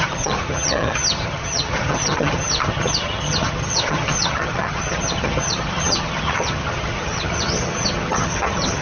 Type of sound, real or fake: fake